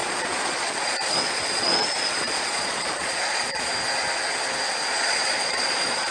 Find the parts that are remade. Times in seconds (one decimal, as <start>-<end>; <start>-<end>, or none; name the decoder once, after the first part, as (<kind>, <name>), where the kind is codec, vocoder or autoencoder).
0.0-3.7 (vocoder, Vocos); 4.9-6.1